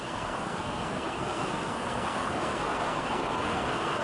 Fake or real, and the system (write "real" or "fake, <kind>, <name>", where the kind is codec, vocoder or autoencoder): fake, codec, SNAC